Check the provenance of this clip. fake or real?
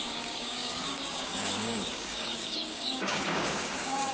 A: fake